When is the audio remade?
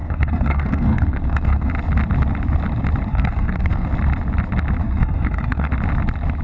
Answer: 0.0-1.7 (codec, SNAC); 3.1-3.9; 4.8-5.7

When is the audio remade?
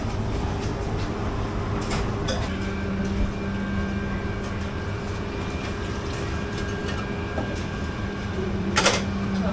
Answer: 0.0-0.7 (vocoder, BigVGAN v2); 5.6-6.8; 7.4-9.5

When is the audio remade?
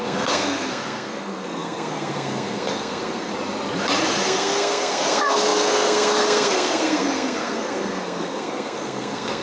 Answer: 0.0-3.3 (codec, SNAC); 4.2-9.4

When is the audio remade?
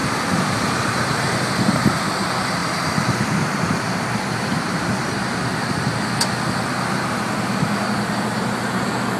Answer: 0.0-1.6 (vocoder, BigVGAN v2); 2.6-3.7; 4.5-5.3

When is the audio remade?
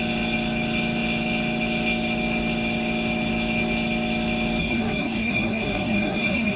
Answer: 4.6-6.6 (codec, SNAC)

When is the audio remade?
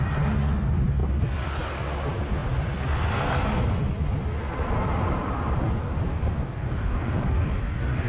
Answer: 6.1-8.1 (codec, DAC)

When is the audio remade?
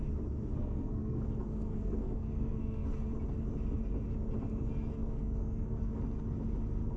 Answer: 0.6-2.9 (codec, SNAC); 5.0-6.0